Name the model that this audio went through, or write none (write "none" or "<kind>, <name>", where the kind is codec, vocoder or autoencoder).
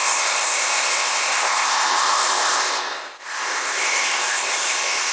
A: codec, ZipCodec